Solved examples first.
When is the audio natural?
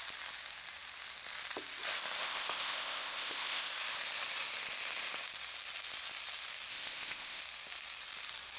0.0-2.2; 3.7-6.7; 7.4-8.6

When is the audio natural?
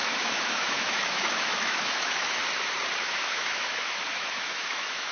2.4-3.0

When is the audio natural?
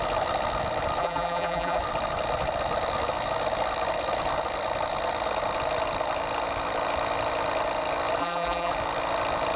0.0-1.0; 1.8-8.2; 8.7-9.6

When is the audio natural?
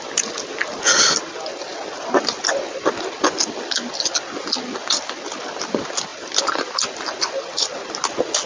0.0-8.5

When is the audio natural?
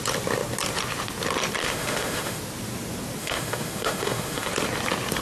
0.0-1.6; 2.4-3.2; 4.5-5.2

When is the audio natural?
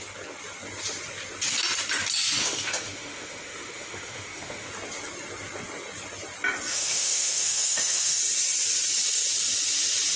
0.0-2.4; 4.7-6.7; 8.2-10.2